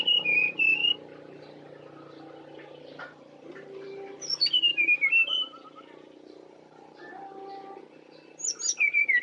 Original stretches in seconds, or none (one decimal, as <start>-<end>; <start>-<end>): 0.8-3.0; 7.1-9.2